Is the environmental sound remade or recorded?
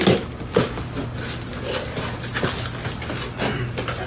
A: recorded